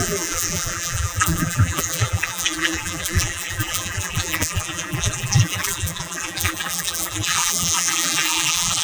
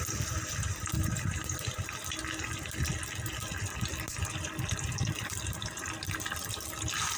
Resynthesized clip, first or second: first